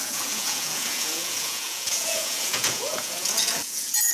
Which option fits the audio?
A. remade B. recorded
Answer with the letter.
A